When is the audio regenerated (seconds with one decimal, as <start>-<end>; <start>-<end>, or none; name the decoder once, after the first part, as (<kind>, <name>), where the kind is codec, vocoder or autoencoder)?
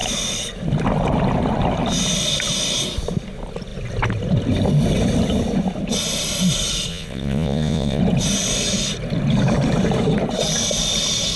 6.9-8.0 (vocoder, Vocos)